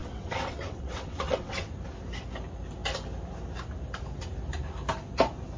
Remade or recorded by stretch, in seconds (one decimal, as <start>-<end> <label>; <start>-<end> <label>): 0.0-1.7 remade; 1.7-5.6 recorded